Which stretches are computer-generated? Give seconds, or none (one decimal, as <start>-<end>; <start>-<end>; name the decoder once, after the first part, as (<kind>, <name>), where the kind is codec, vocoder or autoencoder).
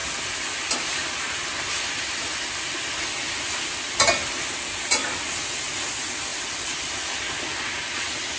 6.3-6.9 (vocoder, BigVGAN v2)